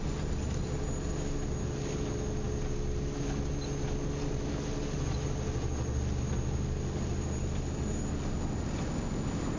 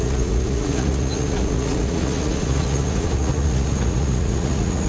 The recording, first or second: first